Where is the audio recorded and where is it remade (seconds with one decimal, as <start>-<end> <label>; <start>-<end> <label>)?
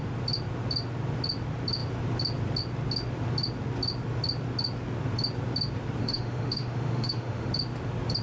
0.0-6.0 recorded; 6.0-7.5 remade; 7.5-8.2 recorded